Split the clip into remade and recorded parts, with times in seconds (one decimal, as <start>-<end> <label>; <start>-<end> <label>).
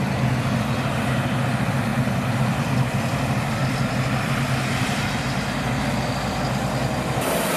0.0-1.9 recorded; 1.9-5.2 remade; 5.2-7.6 recorded